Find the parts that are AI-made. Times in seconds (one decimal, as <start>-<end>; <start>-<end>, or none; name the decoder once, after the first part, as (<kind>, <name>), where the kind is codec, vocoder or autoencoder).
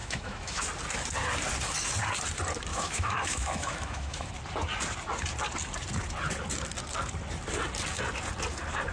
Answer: 0.0-0.6 (autoencoder, DAC-VAE); 2.7-4.3